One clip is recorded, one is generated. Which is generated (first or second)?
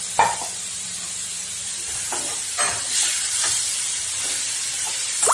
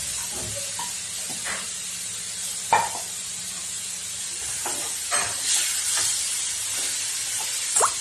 first